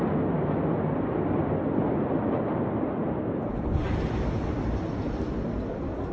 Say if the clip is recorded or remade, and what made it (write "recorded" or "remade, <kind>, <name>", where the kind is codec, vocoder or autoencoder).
recorded